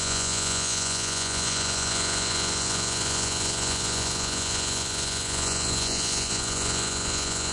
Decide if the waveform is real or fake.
fake